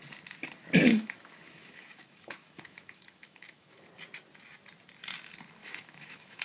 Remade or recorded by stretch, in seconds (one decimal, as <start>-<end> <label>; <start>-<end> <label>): 0.0-0.9 recorded; 0.9-3.8 remade; 3.8-5.6 recorded; 5.6-6.4 remade